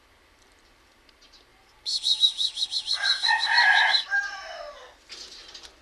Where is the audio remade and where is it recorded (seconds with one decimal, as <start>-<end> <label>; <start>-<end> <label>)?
0.0-1.5 recorded; 1.5-4.2 remade; 4.2-5.8 recorded